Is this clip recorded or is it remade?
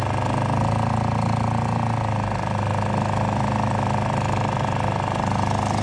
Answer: recorded